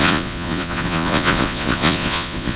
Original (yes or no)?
no